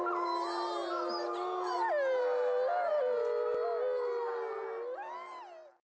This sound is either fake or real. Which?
real